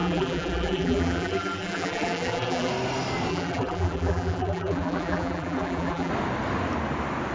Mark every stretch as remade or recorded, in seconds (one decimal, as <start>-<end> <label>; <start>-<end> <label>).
0.0-2.7 remade; 2.7-3.3 recorded; 3.3-6.1 remade; 6.1-7.3 recorded